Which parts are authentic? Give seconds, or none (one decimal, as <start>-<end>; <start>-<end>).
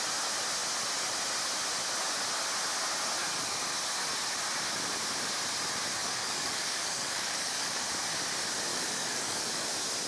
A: 0.0-6.0; 7.8-8.7; 9.7-10.1